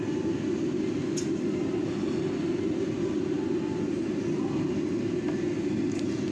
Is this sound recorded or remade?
recorded